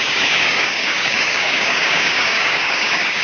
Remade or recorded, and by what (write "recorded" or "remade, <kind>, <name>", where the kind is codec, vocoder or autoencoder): remade, codec, DAC